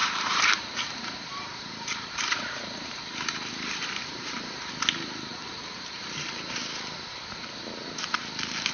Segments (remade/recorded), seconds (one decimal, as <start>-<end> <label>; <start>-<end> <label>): 0.0-4.7 remade; 4.7-5.3 recorded; 5.3-6.5 remade; 6.5-8.7 recorded